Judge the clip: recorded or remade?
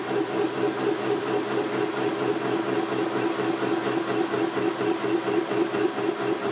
recorded